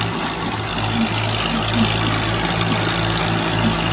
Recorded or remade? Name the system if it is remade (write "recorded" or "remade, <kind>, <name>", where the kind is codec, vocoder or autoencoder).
recorded